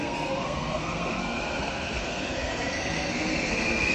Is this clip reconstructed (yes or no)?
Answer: yes